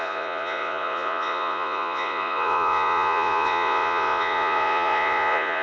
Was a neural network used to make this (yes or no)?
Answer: yes